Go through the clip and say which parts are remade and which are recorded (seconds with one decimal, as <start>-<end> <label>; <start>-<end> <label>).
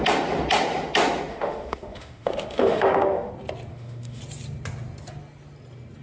0.0-1.3 recorded; 1.3-3.3 remade; 3.3-3.7 recorded; 3.7-4.2 remade; 4.2-6.0 recorded